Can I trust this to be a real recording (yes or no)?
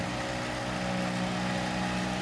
yes